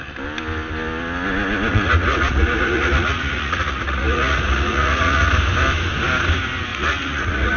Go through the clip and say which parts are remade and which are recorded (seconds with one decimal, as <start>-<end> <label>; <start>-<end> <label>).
0.0-1.7 recorded; 1.7-5.3 remade; 5.3-6.7 recorded; 6.7-7.6 remade